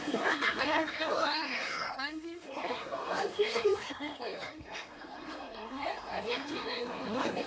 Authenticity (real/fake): fake